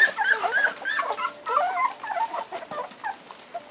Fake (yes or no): no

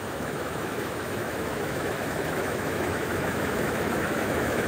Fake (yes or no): yes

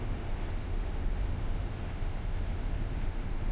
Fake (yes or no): yes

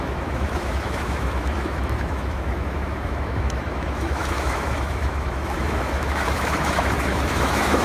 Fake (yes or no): yes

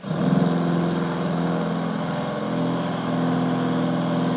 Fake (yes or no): no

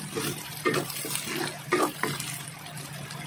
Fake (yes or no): no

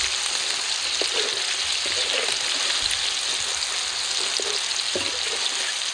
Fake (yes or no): no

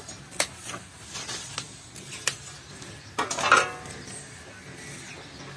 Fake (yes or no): no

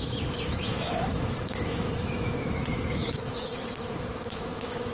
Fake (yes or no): yes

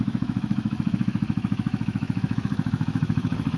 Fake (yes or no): yes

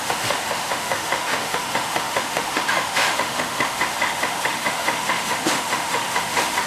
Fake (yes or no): yes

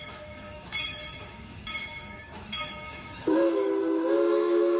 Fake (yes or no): yes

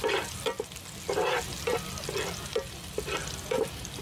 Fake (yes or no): no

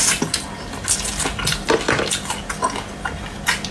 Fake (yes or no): no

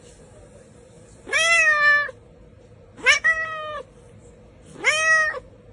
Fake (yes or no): no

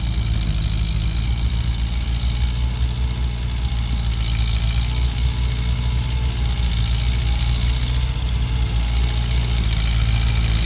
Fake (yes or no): no